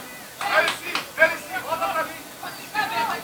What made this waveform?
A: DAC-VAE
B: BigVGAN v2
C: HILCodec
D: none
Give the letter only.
D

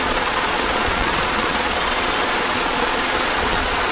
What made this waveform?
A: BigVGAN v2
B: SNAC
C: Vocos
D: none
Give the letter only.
C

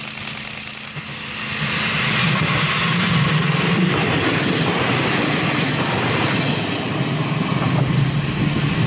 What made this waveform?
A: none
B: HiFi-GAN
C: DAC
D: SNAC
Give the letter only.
A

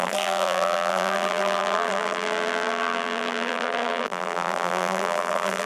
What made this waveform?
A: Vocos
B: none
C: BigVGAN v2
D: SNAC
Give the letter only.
C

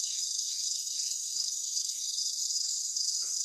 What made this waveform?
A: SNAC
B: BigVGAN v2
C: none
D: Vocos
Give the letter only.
A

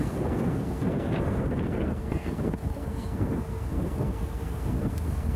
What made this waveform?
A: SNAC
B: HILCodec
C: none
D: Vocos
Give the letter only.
A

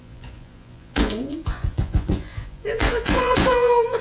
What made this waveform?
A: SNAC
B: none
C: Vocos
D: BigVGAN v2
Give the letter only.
C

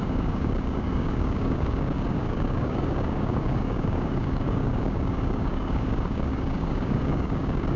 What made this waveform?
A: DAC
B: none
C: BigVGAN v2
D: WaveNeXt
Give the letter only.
A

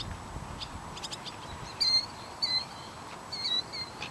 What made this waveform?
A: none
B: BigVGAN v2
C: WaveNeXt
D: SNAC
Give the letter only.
B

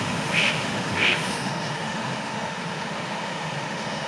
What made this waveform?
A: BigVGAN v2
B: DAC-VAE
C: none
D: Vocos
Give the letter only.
B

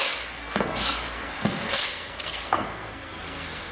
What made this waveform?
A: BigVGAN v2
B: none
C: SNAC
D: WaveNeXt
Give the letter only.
C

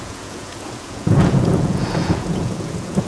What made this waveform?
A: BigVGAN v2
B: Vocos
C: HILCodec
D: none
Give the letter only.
B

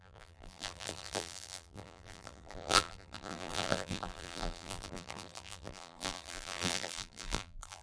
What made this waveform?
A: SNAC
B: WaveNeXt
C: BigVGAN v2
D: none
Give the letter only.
C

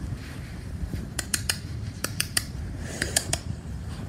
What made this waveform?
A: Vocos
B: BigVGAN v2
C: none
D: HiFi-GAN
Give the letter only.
B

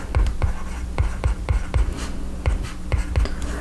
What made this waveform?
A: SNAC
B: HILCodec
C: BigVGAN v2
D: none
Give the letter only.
D